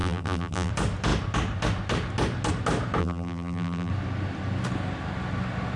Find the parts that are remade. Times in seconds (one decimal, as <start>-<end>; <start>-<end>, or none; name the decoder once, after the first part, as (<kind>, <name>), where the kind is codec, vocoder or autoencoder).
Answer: 0.0-0.7 (vocoder, BigVGAN v2); 3.0-3.9